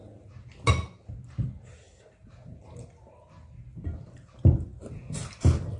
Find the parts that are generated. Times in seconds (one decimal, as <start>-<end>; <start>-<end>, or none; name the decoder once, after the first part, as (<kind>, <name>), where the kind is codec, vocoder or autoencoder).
none